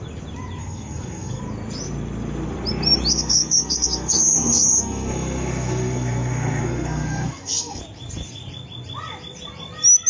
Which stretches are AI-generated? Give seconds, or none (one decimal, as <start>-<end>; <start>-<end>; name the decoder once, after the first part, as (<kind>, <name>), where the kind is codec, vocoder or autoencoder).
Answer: 0.6-1.4 (codec, SNAC); 3.1-7.8